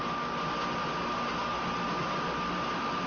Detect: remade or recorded recorded